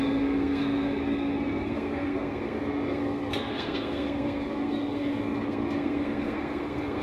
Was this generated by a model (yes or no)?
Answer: yes